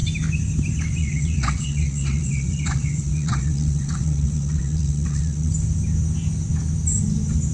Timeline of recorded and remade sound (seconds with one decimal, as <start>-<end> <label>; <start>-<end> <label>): 0.0-1.0 recorded; 1.0-5.5 remade; 5.5-7.5 recorded